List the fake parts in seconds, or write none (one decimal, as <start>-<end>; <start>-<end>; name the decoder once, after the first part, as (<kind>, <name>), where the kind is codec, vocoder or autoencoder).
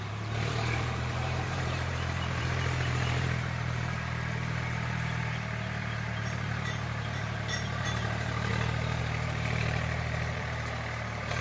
0.0-8.5 (vocoder, BigVGAN v2); 9.0-11.4